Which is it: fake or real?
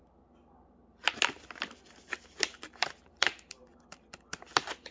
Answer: real